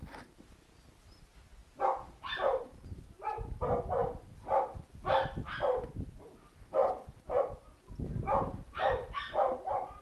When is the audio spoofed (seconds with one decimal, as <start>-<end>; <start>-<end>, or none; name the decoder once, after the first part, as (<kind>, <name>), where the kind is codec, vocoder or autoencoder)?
none